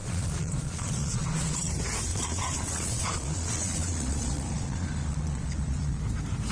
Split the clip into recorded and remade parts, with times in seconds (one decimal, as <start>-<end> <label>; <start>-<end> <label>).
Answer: 0.0-1.7 remade; 1.7-2.1 recorded; 2.1-6.0 remade; 6.0-6.5 recorded